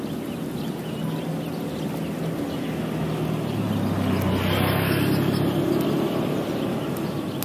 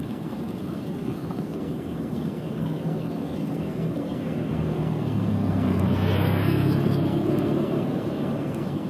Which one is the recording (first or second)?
first